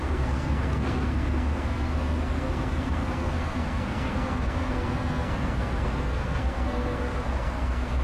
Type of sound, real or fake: fake